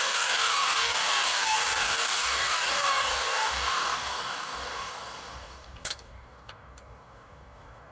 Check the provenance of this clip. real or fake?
fake